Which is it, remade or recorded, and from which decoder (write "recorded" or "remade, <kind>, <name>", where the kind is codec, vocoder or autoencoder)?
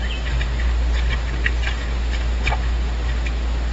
recorded